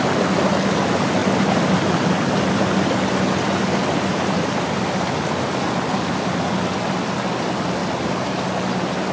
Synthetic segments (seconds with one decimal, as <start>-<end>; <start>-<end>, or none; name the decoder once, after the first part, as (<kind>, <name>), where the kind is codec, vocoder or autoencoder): 1.2-5.7 (vocoder, BigVGAN v2); 7.8-8.3